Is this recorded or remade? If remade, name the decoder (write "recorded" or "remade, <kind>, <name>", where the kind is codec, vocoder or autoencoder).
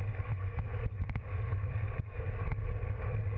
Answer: remade, codec, DAC